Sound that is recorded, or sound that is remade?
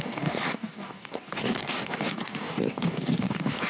remade